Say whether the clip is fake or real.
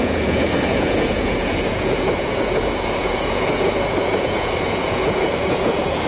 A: fake